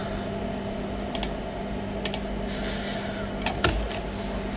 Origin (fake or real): real